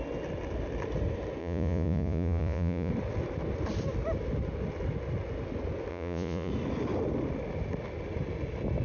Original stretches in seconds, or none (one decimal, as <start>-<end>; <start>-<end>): 0.0-1.4; 2.9-5.9; 6.5-8.8